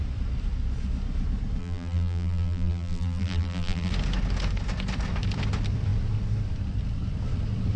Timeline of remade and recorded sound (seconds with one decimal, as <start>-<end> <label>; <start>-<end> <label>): 0.0-1.6 recorded; 1.6-3.9 remade; 3.9-7.8 recorded